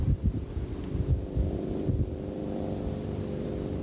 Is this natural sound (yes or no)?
no